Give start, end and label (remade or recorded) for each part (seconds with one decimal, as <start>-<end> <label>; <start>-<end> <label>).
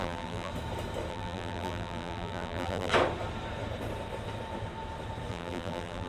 0.0-0.5 remade; 0.5-1.1 recorded; 1.1-2.9 remade; 2.9-5.3 recorded; 5.3-6.1 remade